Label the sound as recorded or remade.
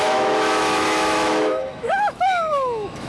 remade